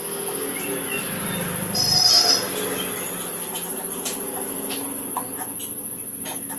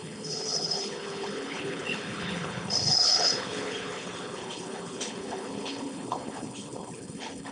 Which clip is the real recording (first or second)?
first